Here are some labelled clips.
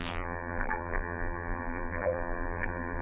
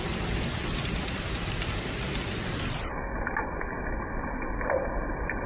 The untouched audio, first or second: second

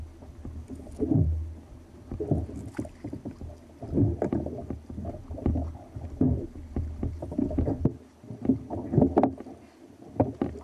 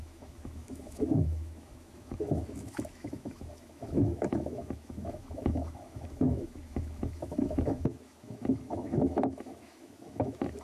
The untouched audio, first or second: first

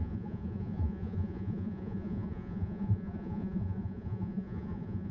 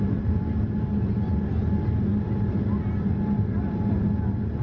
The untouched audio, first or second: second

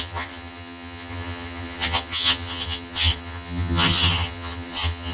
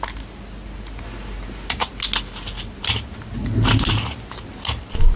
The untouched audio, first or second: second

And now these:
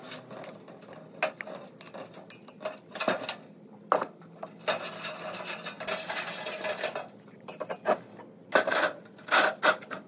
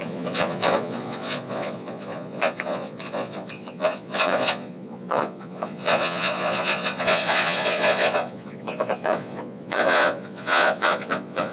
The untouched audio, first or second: first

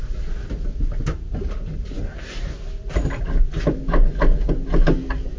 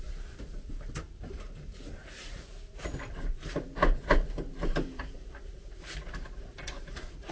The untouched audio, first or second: first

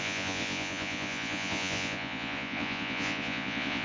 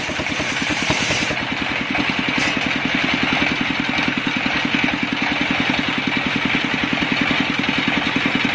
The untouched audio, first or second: second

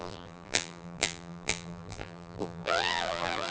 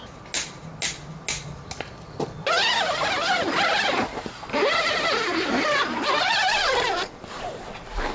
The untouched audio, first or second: second